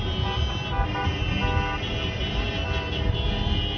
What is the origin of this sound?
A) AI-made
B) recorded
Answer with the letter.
B